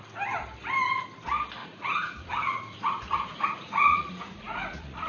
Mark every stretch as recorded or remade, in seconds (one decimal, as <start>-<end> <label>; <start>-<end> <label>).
0.0-1.6 recorded; 1.6-5.1 remade